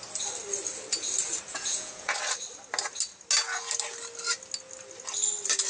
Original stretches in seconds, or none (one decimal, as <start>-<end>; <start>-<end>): 0.0-1.5; 2.2-5.7